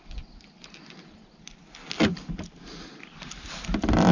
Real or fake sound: real